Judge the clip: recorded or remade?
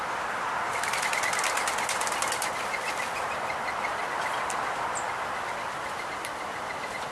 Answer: recorded